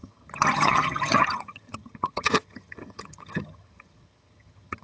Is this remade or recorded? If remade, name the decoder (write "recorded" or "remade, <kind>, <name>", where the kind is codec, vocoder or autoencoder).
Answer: remade, vocoder, HiFi-GAN